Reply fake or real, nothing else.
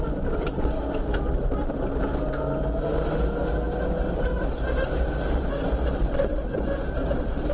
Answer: real